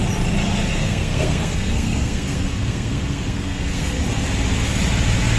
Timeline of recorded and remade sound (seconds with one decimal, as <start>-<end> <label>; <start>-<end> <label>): 0.0-0.8 recorded; 0.8-4.0 remade; 4.0-5.4 recorded